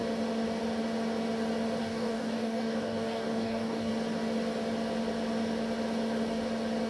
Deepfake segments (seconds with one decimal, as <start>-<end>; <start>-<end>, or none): 1.8-3.9